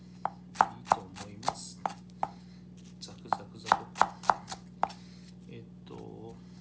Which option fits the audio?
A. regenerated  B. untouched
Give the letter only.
B